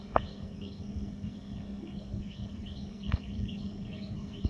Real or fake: fake